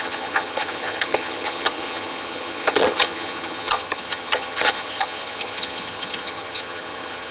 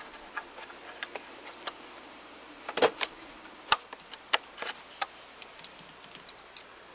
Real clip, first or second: second